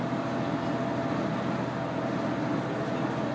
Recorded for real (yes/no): yes